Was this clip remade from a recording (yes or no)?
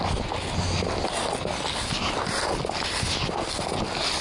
no